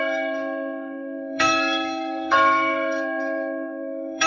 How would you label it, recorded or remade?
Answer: remade